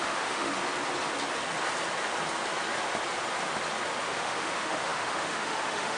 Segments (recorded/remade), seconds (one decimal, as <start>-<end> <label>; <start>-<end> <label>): 0.0-0.5 remade; 0.5-4.0 recorded; 4.0-6.0 remade